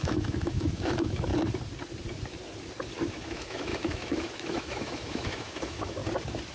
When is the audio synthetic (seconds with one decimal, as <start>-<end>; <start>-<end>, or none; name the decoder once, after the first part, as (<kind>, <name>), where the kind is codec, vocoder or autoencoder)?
0.0-1.3 (autoencoder, DAC-VAE); 3.1-6.0